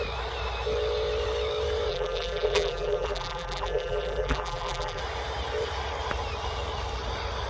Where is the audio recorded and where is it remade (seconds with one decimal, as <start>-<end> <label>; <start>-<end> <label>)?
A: 0.0-1.9 recorded; 1.9-5.0 remade; 5.0-7.5 recorded